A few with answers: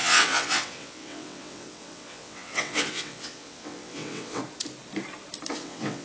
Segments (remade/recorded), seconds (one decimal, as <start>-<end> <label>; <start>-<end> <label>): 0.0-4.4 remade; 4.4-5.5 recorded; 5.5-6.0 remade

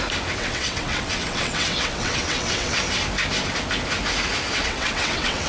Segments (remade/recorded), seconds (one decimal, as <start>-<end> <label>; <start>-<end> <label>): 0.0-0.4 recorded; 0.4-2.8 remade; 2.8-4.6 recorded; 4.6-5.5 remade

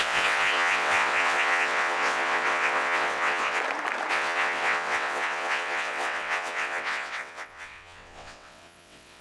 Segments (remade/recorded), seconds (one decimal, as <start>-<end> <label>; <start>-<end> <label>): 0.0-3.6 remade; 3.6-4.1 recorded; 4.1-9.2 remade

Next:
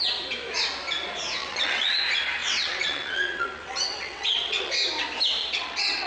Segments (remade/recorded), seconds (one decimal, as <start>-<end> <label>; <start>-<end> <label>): 0.0-1.4 recorded; 1.4-2.0 remade; 2.0-2.4 recorded; 2.4-4.7 remade; 4.7-5.4 recorded; 5.4-6.1 remade